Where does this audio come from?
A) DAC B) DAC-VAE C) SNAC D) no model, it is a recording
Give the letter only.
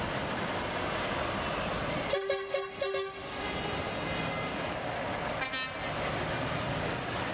D